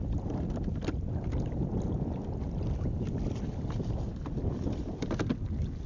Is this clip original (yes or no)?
yes